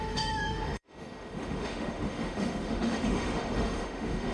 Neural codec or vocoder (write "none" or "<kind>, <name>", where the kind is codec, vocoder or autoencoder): autoencoder, DAC-VAE